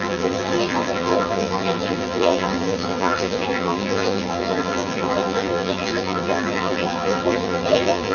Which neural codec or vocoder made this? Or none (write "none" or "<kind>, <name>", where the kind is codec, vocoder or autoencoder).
vocoder, BigVGAN v2